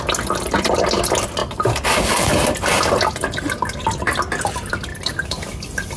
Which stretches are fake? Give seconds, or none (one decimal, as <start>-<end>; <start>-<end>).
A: 4.9-5.5

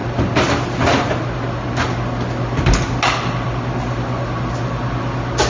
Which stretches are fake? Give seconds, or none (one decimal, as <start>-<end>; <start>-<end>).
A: none